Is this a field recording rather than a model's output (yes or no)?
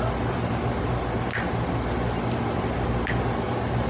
yes